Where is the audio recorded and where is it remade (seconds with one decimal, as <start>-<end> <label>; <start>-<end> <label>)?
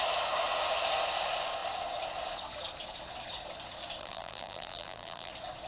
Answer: 0.0-4.0 recorded; 4.0-5.3 remade; 5.3-5.7 recorded